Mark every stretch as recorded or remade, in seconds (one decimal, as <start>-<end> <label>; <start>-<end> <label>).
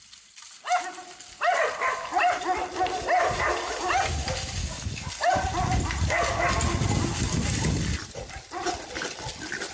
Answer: 0.0-4.6 recorded; 4.6-5.1 remade; 5.1-9.7 recorded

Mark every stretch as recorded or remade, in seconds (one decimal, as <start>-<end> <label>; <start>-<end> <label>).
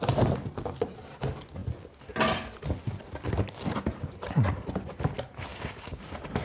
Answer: 0.0-5.5 recorded; 5.5-6.0 remade; 6.0-6.4 recorded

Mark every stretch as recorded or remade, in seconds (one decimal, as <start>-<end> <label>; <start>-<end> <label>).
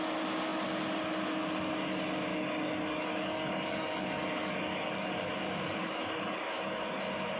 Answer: 0.0-2.3 recorded; 2.3-5.3 remade; 5.3-5.8 recorded; 5.8-7.0 remade; 7.0-7.4 recorded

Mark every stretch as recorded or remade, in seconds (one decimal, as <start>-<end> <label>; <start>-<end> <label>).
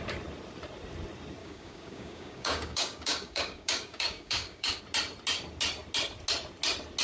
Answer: 0.0-1.4 recorded; 1.4-4.8 remade; 4.8-7.0 recorded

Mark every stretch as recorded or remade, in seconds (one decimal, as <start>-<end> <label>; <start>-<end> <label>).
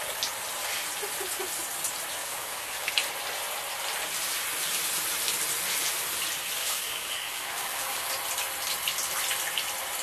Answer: 0.0-2.2 recorded; 2.2-2.9 remade; 2.9-6.6 recorded; 6.6-8.1 remade; 8.1-10.0 recorded